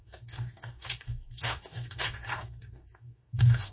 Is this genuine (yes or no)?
no